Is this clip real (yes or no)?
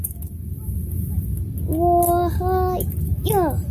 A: yes